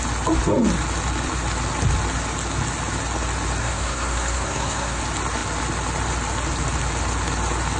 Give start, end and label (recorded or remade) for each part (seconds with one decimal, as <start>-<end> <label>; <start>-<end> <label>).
0.0-3.6 recorded; 3.6-5.0 remade; 5.0-7.8 recorded